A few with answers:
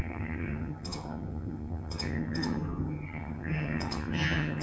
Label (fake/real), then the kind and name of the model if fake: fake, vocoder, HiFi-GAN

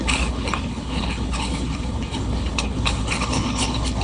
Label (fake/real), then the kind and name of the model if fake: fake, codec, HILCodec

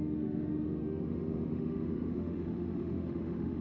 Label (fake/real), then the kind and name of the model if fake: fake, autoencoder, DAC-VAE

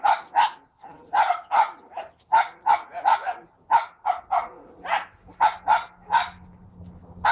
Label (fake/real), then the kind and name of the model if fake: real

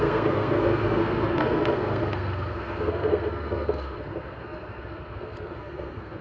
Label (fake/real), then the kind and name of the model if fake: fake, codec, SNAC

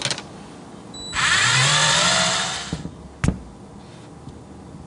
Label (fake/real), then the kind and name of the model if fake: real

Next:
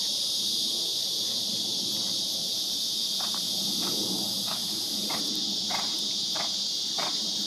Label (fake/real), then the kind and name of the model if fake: fake, vocoder, BigVGAN v2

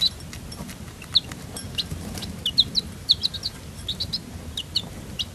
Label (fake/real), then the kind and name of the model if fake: real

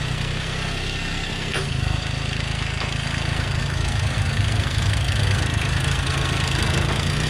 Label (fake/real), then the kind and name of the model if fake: fake, codec, SNAC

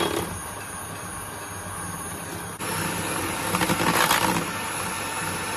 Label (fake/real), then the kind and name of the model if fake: real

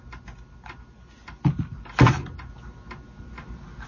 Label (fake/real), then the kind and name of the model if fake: real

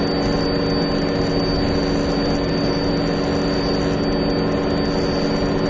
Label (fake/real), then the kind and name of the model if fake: real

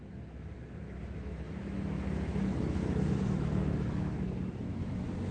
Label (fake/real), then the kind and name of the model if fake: fake, autoencoder, DAC-VAE